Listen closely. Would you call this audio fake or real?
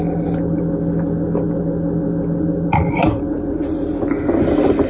real